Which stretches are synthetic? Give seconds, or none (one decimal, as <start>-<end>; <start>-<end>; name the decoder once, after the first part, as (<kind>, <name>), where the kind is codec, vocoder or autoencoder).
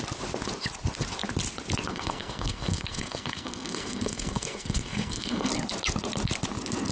1.9-5.5 (codec, SNAC)